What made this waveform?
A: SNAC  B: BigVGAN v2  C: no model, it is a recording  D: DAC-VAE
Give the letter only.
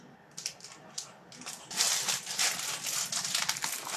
C